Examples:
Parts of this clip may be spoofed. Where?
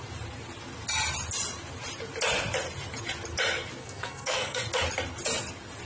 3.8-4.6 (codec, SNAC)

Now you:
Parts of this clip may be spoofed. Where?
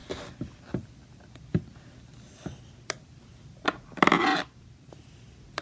4.3-4.9 (vocoder, BigVGAN v2)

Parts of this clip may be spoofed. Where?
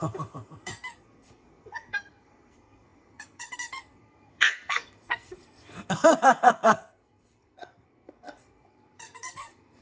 0.0-9.8 (codec, SNAC)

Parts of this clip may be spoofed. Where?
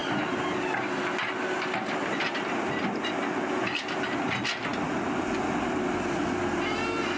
none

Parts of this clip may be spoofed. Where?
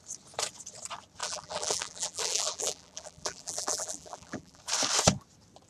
1.2-4.6 (vocoder, BigVGAN v2)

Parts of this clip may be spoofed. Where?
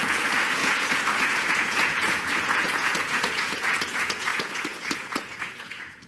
0.0-6.1 (vocoder, Vocos)